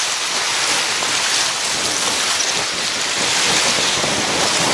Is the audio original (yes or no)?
yes